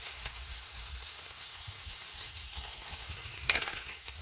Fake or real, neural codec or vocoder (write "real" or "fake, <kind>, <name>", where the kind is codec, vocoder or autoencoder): fake, codec, SNAC